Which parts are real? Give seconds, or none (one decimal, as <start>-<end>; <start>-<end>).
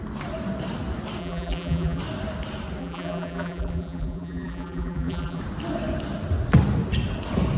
0.0-1.2; 2.0-2.8; 5.4-7.6